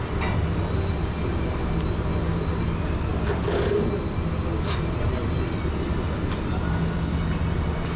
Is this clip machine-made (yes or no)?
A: no